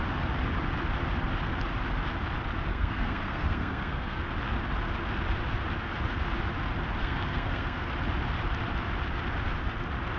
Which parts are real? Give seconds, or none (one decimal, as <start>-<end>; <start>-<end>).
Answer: 0.0-2.7; 4.2-7.0; 7.9-10.2